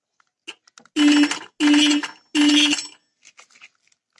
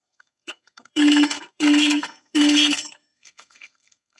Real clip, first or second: first